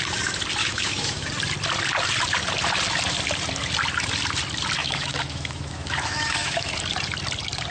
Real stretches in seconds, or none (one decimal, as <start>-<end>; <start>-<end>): 0.0-0.6; 1.3-4.8; 6.7-7.7